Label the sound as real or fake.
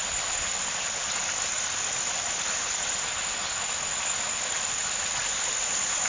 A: real